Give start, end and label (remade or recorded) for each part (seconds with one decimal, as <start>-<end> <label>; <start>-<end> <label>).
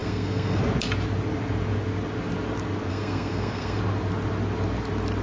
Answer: 0.0-0.6 remade; 0.6-2.9 recorded; 2.9-3.8 remade; 3.8-5.2 recorded